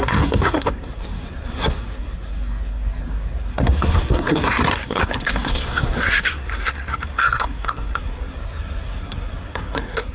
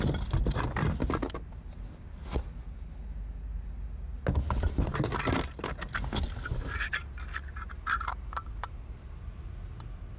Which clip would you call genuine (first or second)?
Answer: second